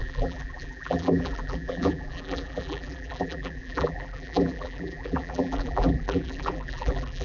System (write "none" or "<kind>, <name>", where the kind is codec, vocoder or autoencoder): vocoder, BigVGAN v2